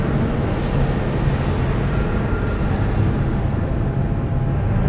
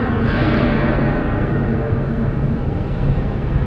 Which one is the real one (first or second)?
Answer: first